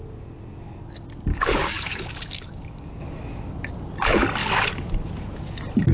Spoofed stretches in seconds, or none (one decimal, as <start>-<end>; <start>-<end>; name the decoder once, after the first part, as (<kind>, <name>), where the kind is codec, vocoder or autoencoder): 1.3-3.2 (codec, DAC); 4.4-5.1